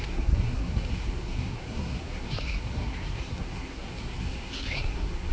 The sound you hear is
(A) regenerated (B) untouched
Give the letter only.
A